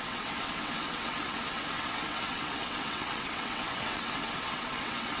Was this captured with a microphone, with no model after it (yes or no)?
no